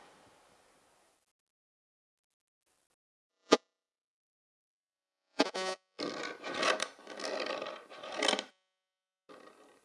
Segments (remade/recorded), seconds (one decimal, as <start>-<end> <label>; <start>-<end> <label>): 0.0-3.3 recorded; 3.3-6.0 remade; 6.0-8.5 recorded; 8.5-9.3 remade; 9.3-9.8 recorded